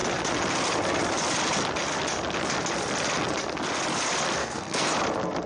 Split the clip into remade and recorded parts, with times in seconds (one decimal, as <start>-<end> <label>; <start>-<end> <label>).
0.0-4.4 recorded; 4.4-4.9 remade; 4.9-5.5 recorded